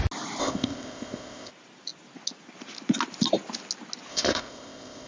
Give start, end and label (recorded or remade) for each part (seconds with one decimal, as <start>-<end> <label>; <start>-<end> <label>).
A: 0.0-0.4 recorded; 0.4-1.5 remade; 1.5-4.1 recorded; 4.1-5.1 remade